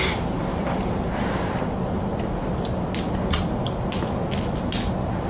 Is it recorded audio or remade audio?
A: recorded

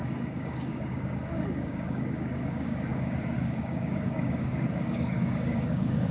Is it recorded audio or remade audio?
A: remade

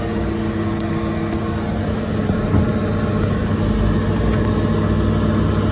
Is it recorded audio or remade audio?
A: recorded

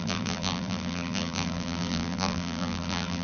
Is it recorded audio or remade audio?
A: remade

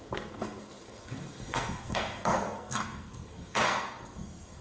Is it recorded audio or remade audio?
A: remade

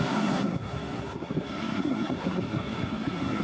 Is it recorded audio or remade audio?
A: remade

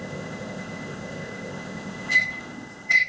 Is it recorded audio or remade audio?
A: remade